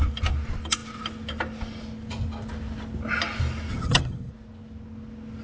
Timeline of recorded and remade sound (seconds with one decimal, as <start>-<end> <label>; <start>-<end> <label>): 0.0-3.7 recorded; 3.7-4.3 remade; 4.3-5.4 recorded